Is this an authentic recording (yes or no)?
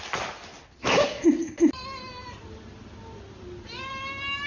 yes